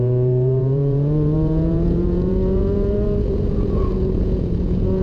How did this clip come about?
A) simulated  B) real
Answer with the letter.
A